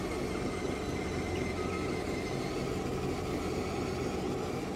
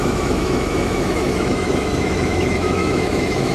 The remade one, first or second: second